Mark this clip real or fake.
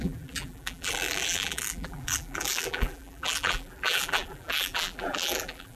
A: fake